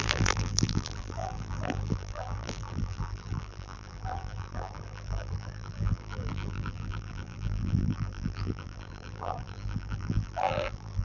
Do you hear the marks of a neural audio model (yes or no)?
yes